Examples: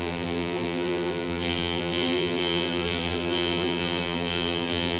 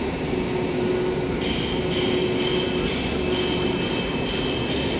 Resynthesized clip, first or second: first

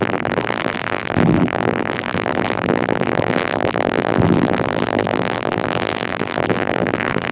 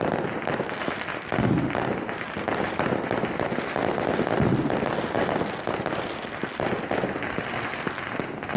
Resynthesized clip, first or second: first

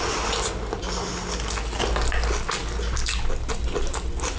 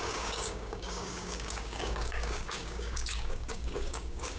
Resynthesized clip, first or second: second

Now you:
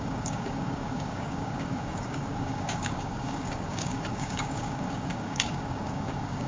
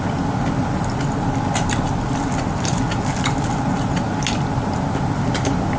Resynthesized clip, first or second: first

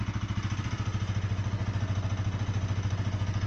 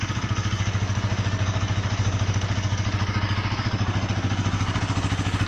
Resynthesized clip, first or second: second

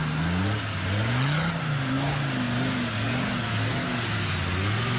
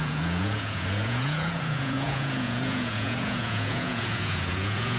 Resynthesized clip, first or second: second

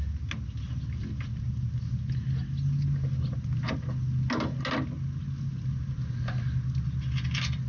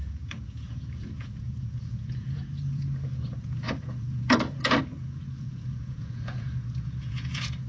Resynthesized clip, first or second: second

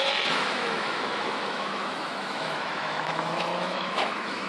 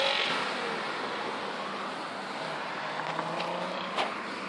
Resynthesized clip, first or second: first